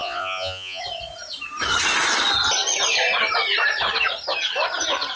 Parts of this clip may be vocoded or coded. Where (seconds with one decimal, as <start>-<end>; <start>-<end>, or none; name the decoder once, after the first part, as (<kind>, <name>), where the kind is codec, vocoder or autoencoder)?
0.0-0.8 (vocoder, Vocos)